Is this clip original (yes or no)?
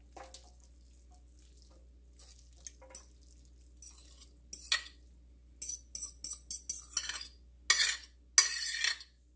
yes